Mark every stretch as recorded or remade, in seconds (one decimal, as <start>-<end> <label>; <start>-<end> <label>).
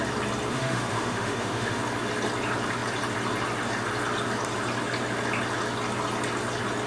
0.0-0.5 recorded; 0.5-1.8 remade; 1.8-6.9 recorded